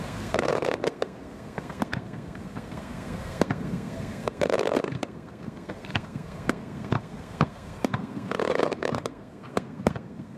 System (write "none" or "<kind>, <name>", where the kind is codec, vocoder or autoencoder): codec, SNAC